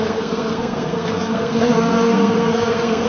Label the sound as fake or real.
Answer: fake